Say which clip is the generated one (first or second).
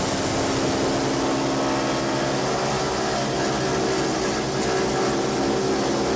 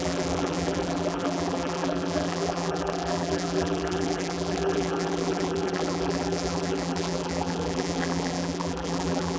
second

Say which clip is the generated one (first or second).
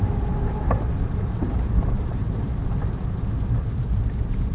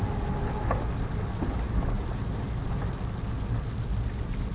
first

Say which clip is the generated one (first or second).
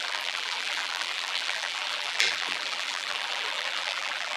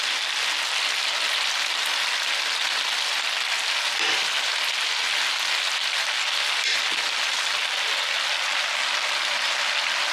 first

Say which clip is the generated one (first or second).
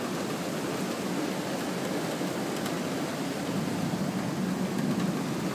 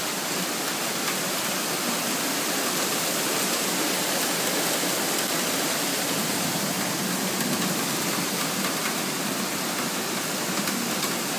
second